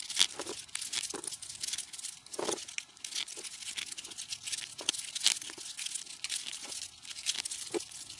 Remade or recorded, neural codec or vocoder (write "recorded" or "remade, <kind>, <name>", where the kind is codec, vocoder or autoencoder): recorded